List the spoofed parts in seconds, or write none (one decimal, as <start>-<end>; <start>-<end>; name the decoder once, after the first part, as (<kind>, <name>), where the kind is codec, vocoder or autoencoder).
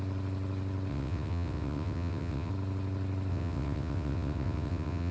0.9-2.5 (vocoder, WaveNeXt); 3.3-5.1